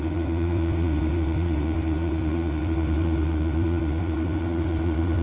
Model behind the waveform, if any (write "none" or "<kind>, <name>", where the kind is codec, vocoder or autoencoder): vocoder, WaveNeXt